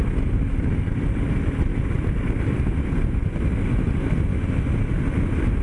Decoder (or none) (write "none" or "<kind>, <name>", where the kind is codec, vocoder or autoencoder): none